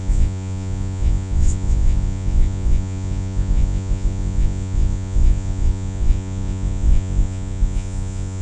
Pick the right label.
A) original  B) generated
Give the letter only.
B